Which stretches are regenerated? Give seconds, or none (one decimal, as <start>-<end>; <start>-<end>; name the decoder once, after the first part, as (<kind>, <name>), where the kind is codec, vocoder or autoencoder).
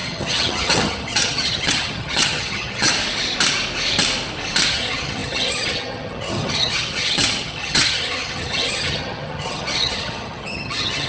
0.0-2.9 (vocoder, HiFi-GAN); 4.7-11.1